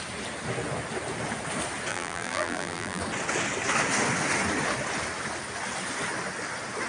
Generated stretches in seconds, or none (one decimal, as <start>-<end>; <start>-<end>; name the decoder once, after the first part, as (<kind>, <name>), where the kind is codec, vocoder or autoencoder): 1.9-3.0 (vocoder, BigVGAN v2)